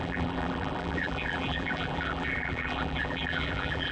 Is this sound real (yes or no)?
no